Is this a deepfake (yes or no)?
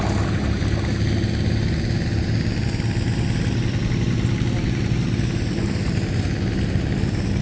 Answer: no